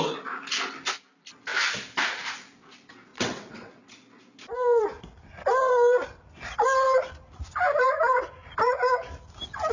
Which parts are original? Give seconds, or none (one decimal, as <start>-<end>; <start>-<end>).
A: 0.0-3.1; 3.8-9.7